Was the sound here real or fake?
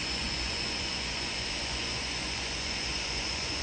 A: fake